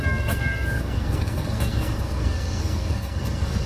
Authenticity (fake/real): fake